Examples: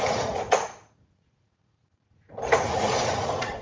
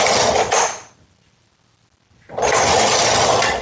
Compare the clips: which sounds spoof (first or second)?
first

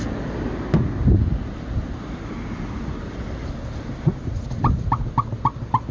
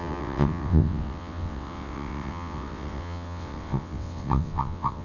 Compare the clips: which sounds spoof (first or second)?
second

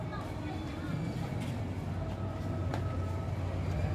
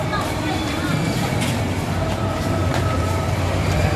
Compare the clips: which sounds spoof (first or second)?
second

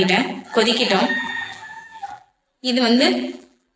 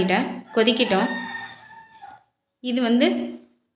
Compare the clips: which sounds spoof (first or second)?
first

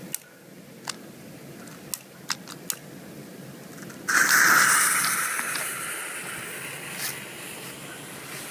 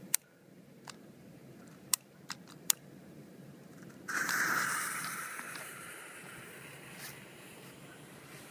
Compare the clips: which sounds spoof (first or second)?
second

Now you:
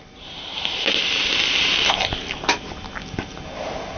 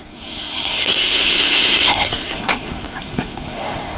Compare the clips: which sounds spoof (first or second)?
second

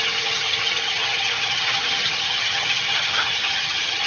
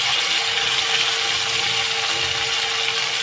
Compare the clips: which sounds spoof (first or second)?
first